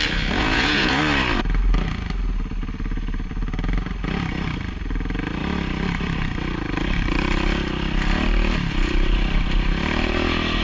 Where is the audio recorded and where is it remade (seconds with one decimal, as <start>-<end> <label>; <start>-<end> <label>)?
0.0-0.4 recorded; 0.4-1.0 remade; 1.0-10.6 recorded